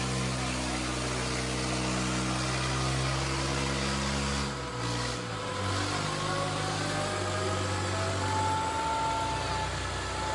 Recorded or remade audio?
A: recorded